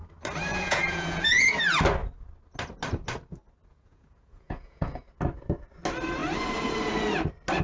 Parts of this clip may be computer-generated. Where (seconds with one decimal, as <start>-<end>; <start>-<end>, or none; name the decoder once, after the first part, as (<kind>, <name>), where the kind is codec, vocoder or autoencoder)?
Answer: 0.5-1.5 (vocoder, Vocos); 3.7-5.0